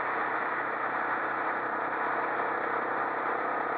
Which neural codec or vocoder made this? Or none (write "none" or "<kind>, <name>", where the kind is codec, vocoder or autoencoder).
none